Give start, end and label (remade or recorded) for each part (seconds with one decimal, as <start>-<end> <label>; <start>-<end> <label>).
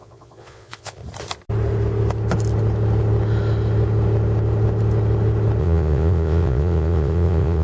0.0-1.0 remade; 1.0-5.6 recorded; 5.6-7.6 remade